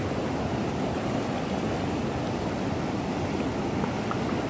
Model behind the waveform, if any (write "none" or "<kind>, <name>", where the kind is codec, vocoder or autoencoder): none